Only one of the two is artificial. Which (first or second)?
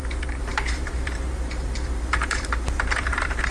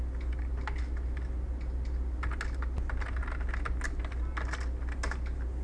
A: first